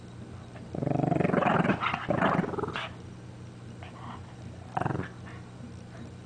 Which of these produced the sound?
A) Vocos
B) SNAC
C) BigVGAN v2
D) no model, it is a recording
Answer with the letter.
D